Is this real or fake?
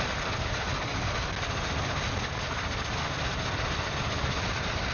real